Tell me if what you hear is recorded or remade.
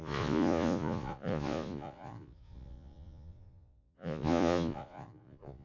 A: remade